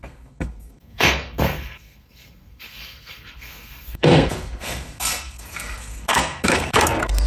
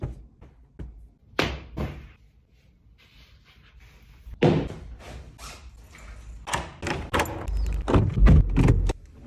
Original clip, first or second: second